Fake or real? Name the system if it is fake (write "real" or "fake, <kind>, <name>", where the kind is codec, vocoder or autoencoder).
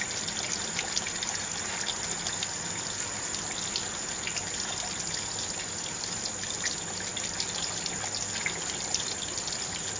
real